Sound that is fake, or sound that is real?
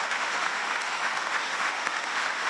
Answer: fake